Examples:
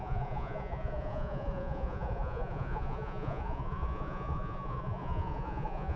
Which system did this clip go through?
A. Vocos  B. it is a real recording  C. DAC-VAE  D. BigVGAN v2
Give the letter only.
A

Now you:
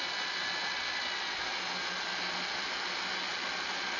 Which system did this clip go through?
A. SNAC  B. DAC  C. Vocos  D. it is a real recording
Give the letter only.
D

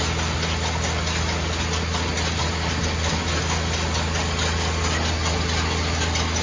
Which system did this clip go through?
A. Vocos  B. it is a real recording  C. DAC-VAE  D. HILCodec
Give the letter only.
B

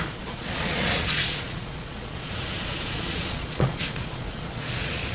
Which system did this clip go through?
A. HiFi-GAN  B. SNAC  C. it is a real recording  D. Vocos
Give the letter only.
D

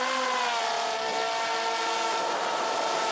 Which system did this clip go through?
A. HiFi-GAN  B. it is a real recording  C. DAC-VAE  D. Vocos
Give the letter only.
B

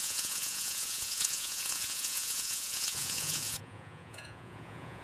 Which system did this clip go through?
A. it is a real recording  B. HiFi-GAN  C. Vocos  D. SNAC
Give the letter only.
C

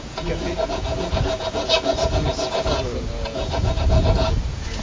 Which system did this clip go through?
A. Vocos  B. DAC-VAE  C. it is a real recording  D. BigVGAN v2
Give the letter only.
A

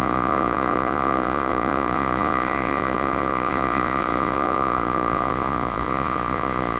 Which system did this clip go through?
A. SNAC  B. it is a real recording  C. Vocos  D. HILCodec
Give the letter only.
C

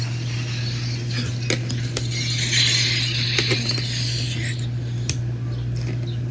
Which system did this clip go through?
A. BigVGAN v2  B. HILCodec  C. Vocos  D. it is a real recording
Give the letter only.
D